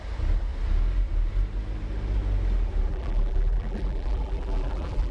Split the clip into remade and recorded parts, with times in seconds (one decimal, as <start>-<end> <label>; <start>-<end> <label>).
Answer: 0.0-2.9 recorded; 2.9-5.1 remade